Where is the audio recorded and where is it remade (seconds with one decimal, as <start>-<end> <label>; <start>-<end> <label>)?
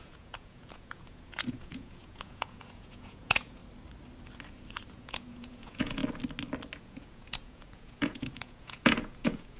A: 0.0-3.6 remade; 3.6-4.9 recorded; 4.9-6.0 remade; 6.0-6.8 recorded; 6.8-9.6 remade